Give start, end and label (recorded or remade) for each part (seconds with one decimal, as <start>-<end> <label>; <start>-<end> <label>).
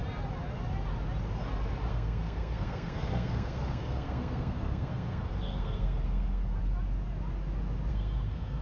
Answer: 0.0-1.9 recorded; 1.9-6.6 remade; 6.6-7.9 recorded; 7.9-8.6 remade